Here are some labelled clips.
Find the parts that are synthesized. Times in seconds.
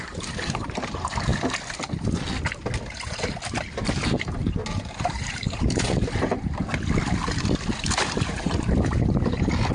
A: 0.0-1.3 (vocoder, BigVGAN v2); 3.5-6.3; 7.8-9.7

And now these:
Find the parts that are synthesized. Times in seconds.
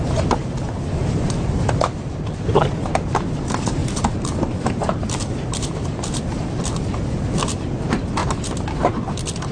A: 1.0-2.5 (vocoder, BigVGAN v2); 3.8-7.6; 8.2-8.8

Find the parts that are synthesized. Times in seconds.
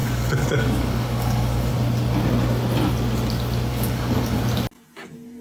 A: 0.0-1.7 (codec, DAC); 3.7-4.4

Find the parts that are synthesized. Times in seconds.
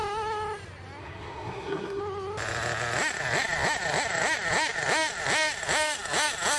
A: 1.0-2.0 (codec, SNAC)